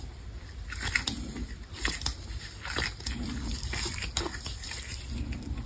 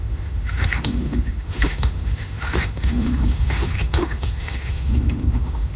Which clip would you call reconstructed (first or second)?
second